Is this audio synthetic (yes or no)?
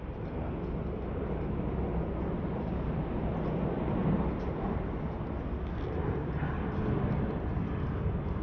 no